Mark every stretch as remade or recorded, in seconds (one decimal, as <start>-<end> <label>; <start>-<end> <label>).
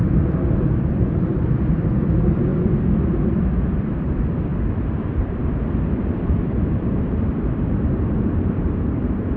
0.0-9.4 remade